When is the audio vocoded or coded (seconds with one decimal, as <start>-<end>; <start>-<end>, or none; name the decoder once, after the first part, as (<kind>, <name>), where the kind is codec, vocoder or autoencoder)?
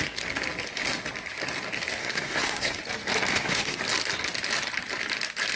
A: 2.0-2.8 (codec, SNAC); 3.3-3.8